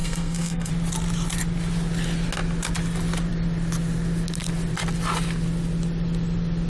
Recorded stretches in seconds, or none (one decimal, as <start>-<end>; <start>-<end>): 0.7-6.7